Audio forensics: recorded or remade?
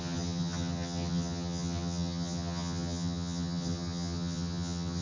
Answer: remade